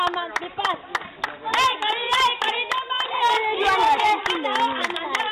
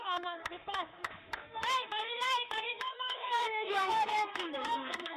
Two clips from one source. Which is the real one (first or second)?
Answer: first